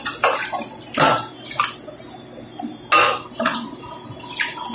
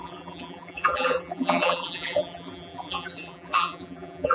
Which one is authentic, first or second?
first